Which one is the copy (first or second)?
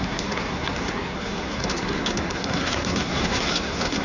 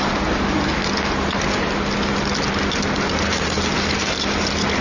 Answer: first